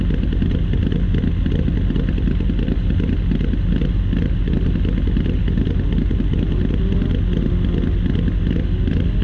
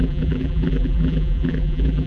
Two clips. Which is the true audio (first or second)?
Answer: first